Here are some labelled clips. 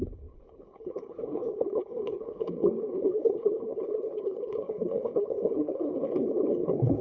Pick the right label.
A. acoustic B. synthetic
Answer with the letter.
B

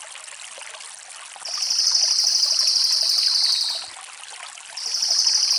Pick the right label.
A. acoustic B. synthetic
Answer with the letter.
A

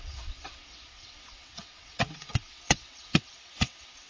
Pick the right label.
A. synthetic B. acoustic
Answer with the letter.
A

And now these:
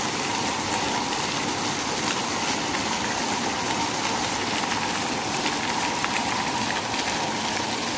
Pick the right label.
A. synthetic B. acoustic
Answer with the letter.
B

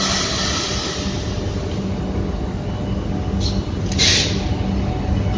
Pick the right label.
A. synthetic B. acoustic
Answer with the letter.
B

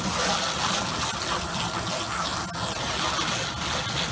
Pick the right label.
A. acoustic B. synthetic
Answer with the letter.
A